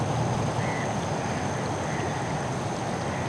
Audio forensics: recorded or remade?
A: recorded